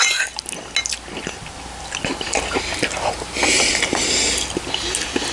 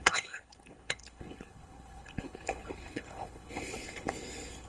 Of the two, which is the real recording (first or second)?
first